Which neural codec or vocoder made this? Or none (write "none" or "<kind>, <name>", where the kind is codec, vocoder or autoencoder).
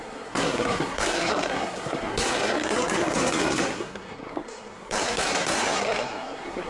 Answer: codec, SNAC